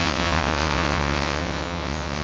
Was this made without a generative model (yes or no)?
no